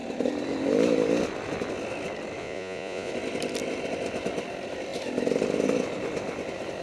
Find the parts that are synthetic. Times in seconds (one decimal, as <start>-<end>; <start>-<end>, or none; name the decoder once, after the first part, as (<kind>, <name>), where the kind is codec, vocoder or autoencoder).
2.4-3.1 (vocoder, Vocos)